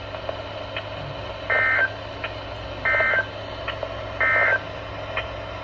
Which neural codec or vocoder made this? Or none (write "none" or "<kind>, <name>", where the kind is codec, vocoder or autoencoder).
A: none